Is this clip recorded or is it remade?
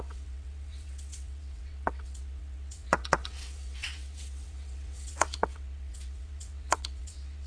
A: remade